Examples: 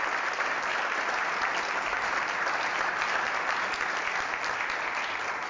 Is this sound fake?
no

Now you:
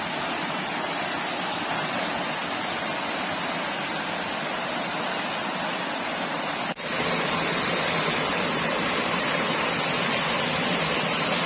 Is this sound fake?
no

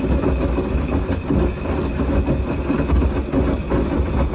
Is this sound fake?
no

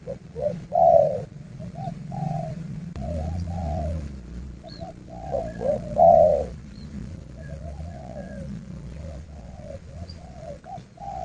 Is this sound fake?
yes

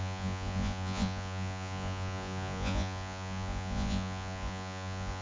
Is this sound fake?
yes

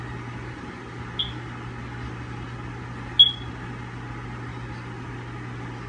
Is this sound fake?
no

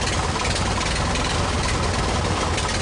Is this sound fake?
no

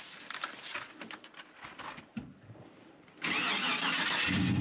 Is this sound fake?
no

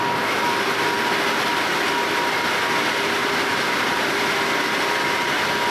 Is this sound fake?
no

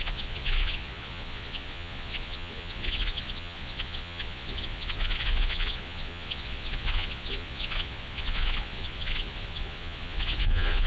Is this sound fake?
yes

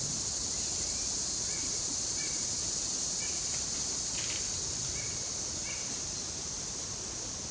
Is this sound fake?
no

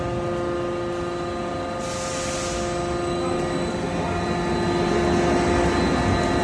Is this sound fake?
no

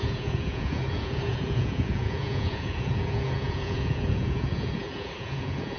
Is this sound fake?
yes